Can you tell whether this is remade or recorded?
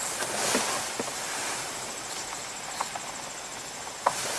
recorded